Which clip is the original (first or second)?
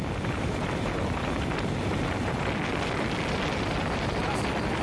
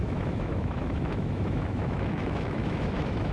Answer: first